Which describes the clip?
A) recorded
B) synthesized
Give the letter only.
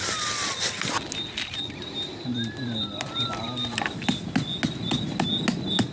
A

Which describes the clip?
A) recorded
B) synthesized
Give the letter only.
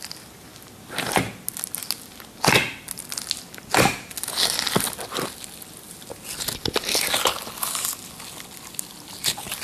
A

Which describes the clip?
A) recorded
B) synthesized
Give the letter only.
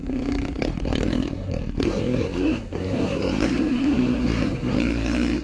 B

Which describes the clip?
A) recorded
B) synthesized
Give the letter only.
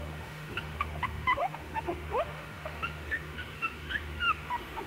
B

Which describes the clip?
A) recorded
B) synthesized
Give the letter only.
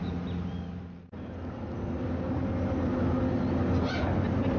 A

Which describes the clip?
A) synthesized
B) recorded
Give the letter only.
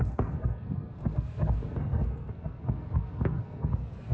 A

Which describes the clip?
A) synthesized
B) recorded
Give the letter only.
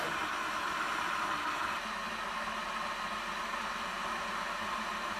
B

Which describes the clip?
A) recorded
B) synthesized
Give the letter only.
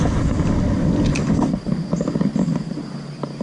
A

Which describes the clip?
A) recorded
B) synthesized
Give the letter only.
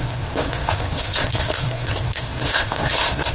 B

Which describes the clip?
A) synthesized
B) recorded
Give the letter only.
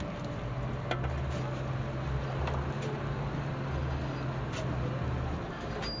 B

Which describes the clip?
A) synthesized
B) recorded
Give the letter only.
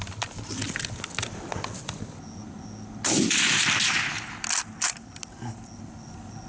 B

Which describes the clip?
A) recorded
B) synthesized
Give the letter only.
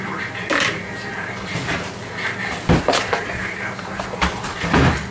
A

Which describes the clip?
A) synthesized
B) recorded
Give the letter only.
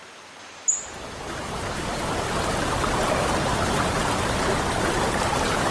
B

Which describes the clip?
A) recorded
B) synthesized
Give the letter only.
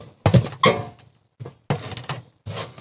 A